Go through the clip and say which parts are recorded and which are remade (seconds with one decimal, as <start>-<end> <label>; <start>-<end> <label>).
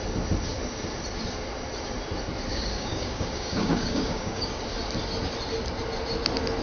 0.0-2.5 recorded; 2.5-4.6 remade; 4.6-6.6 recorded